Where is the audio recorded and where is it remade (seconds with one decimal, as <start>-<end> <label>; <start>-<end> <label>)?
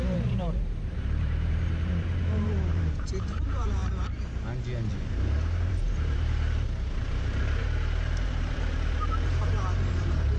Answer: 0.0-3.8 remade; 3.8-5.7 recorded; 5.7-10.4 remade